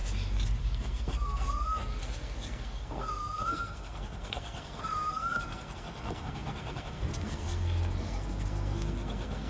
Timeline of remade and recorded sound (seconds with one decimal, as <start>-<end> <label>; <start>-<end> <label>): 0.0-0.6 recorded; 0.6-9.5 remade